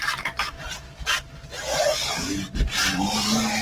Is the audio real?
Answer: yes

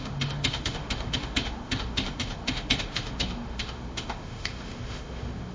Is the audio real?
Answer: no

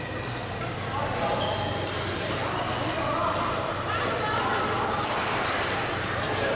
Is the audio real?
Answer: yes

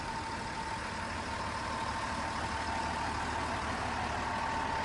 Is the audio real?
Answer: yes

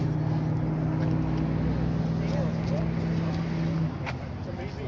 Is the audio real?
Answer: yes